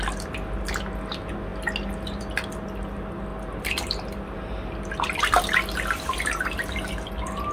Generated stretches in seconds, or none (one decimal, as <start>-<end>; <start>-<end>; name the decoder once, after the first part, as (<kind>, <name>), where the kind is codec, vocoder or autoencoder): none